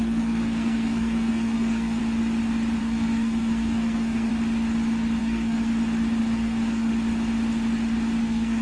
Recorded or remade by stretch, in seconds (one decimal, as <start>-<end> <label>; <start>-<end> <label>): 0.0-2.0 remade; 2.0-2.8 recorded; 2.8-4.3 remade; 4.3-5.2 recorded; 5.2-5.7 remade; 5.7-6.2 recorded; 6.2-6.9 remade; 6.9-8.2 recorded; 8.2-8.6 remade